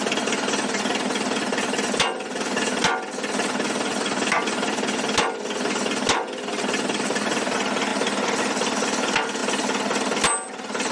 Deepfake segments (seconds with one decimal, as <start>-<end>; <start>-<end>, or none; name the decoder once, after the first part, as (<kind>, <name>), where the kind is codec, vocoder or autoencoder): none